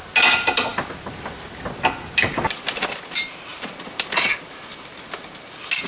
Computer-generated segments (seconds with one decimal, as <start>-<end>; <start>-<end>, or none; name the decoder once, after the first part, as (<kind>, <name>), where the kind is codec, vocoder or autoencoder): none

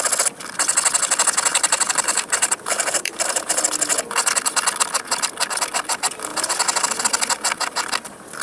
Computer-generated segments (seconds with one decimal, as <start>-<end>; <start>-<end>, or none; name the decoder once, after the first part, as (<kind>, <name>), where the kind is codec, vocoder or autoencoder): 1.5-3.6 (vocoder, BigVGAN v2)

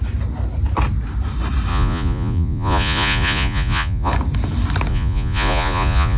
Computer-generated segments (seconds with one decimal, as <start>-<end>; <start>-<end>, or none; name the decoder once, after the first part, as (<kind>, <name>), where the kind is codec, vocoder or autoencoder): 1.7-4.1 (vocoder, Vocos); 4.9-6.2

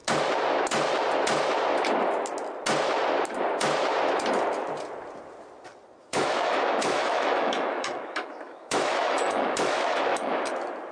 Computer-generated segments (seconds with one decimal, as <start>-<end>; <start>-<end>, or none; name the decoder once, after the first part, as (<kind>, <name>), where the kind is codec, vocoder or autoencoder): 6.0-10.5 (autoencoder, DAC-VAE)